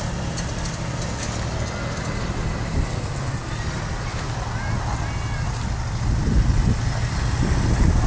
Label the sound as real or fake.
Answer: real